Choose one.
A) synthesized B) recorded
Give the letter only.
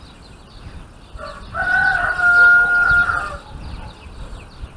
B